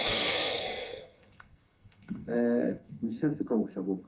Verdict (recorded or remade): remade